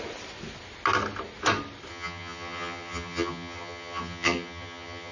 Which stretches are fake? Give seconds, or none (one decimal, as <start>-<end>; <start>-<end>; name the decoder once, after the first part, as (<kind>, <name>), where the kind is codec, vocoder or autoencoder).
1.9-5.1 (vocoder, HiFi-GAN)